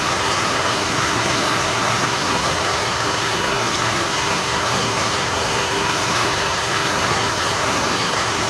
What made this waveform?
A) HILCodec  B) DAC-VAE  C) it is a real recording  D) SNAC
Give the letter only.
D